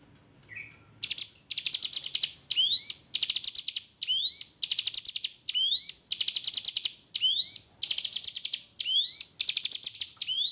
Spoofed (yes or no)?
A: no